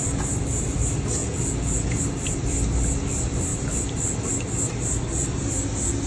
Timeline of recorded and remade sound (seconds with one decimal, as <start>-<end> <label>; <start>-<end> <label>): 0.0-1.2 recorded; 1.2-2.0 remade; 2.0-6.1 recorded